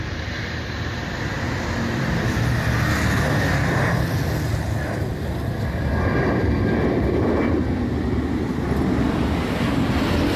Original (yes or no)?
yes